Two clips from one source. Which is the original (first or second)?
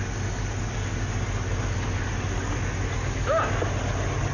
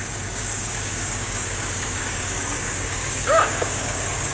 first